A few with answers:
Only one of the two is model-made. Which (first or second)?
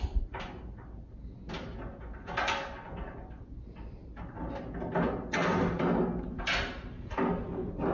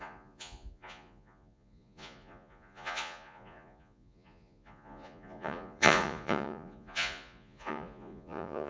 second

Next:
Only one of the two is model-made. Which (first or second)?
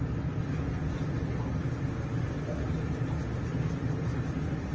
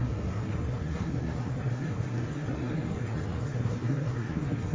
second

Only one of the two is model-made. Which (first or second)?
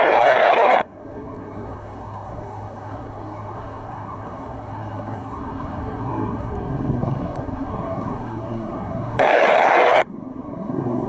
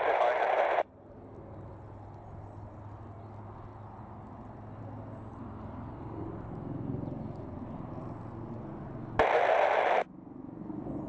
first